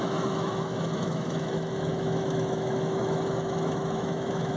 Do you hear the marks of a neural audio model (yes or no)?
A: yes